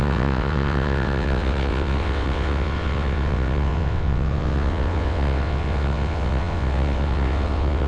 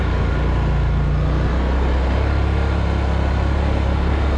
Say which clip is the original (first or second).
second